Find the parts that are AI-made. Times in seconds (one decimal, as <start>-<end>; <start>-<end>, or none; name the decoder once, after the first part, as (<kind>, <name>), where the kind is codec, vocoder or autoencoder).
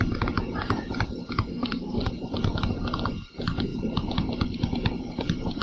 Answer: 1.5-2.1 (codec, SNAC)